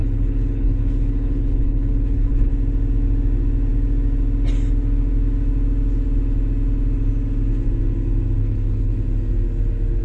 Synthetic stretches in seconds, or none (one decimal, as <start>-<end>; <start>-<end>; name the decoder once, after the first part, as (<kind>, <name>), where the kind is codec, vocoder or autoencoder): 0.0-2.5 (codec, HILCodec); 8.4-8.9